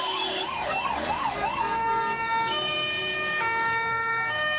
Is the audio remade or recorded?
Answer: remade